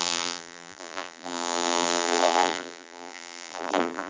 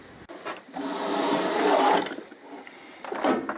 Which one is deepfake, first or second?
first